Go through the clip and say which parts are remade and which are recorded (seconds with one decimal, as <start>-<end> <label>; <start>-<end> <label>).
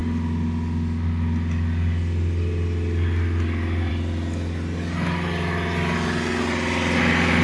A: 0.0-7.4 recorded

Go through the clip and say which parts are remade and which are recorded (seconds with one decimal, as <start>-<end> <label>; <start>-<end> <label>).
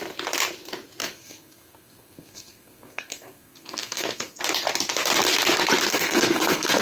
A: 0.0-1.0 recorded; 1.0-4.4 remade; 4.4-5.9 recorded; 5.9-6.8 remade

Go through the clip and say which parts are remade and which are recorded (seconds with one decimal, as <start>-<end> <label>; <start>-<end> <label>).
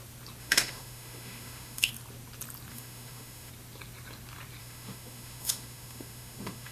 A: 0.0-0.4 recorded; 0.4-1.9 remade; 1.9-2.7 recorded; 2.7-3.5 remade; 3.5-4.6 recorded; 4.6-6.7 remade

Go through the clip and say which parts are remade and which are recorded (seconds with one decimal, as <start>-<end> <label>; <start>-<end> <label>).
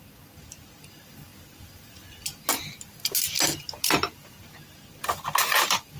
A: 0.0-6.0 recorded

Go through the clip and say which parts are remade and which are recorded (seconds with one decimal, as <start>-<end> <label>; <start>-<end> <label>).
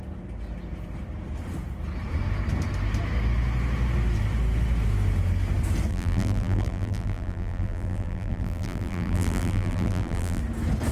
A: 0.0-5.9 recorded; 5.9-10.4 remade; 10.4-10.9 recorded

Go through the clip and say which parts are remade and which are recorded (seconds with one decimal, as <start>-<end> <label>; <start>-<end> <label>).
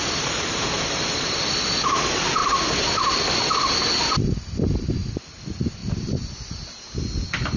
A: 0.0-2.4 recorded; 2.4-3.0 remade; 3.0-5.8 recorded; 5.8-6.3 remade; 6.3-7.6 recorded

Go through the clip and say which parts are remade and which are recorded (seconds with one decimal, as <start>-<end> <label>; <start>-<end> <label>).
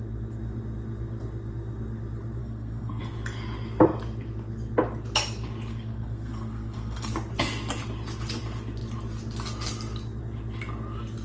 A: 0.0-2.4 recorded; 2.4-3.0 remade; 3.0-5.7 recorded; 5.7-7.1 remade; 7.1-11.2 recorded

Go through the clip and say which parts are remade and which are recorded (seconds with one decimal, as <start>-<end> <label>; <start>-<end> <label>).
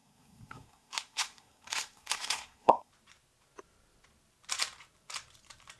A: 0.0-2.9 remade; 2.9-5.8 recorded